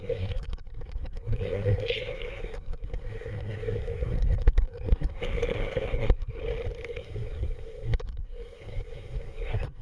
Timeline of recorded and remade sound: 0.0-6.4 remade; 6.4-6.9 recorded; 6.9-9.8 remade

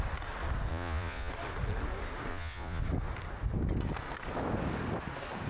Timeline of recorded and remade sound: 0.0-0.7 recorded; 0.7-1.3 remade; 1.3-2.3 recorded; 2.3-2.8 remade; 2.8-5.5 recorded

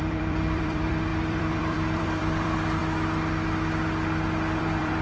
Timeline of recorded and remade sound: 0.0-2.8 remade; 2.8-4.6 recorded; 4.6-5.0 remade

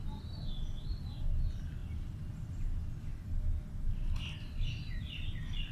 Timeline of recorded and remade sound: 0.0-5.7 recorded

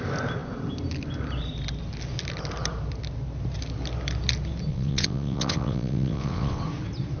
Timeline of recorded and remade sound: 0.0-4.7 recorded; 4.7-6.6 remade; 6.6-7.2 recorded

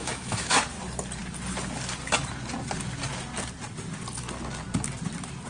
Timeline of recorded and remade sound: 0.0-0.6 remade; 0.6-5.5 recorded

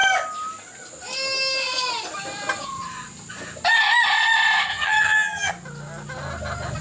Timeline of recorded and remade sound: 0.0-4.7 recorded; 4.7-5.5 remade; 5.5-6.8 recorded